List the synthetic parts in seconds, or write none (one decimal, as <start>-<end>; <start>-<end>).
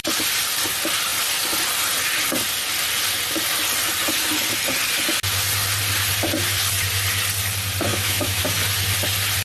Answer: 7.9-8.4